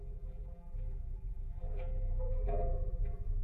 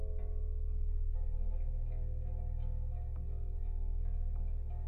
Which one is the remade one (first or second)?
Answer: first